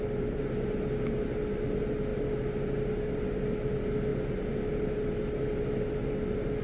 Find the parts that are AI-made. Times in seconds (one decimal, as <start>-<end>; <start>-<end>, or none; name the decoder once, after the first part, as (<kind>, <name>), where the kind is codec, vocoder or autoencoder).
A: none